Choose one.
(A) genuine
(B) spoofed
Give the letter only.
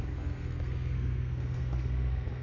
B